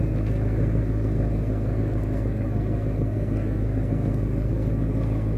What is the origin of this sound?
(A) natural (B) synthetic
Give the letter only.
B